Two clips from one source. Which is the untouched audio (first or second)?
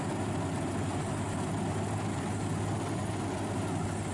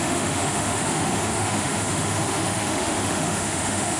first